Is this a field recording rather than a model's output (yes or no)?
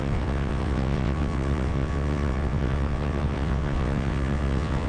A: no